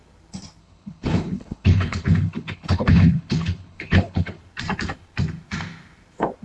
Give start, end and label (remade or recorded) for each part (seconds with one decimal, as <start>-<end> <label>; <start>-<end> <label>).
0.0-0.6 recorded; 0.6-4.4 remade; 4.4-6.4 recorded

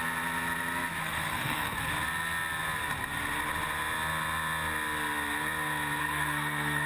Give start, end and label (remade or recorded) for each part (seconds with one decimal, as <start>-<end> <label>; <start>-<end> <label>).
0.0-1.0 recorded; 1.0-1.9 remade; 1.9-6.0 recorded; 6.0-6.9 remade

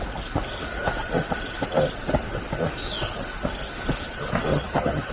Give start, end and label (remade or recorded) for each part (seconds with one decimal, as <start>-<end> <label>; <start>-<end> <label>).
0.0-4.5 recorded; 4.5-5.1 remade

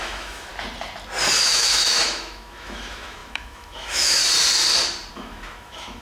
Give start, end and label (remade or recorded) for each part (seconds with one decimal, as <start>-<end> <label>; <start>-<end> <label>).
0.0-0.5 remade; 0.5-1.4 recorded; 1.4-4.2 remade; 4.2-5.1 recorded; 5.1-6.0 remade

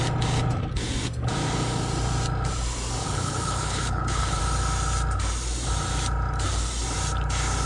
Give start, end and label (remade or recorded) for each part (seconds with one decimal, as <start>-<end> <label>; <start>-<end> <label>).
0.0-3.0 recorded; 3.0-4.4 remade; 4.4-7.7 recorded

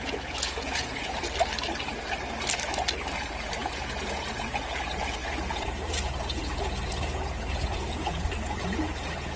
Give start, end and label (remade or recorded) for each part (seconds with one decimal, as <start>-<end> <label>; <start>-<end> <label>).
0.0-1.2 remade; 1.2-3.1 recorded; 3.1-9.4 remade